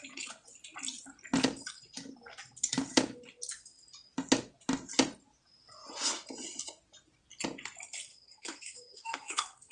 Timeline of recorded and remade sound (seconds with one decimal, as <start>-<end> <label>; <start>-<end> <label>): 0.0-8.1 recorded; 8.1-9.7 remade